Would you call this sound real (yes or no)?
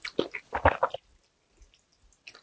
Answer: yes